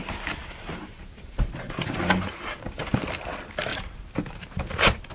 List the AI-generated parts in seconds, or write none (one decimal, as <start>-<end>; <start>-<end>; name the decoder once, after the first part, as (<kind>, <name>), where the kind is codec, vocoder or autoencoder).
0.4-2.8 (vocoder, BigVGAN v2); 3.7-5.1